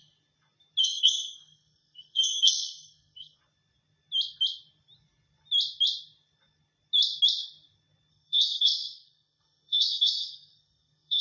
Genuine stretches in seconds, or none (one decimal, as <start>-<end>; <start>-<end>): 0.0-0.8; 3.4-8.1